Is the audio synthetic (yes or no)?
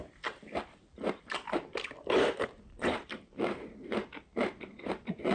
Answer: yes